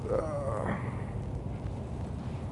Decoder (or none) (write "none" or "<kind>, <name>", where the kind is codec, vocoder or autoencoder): none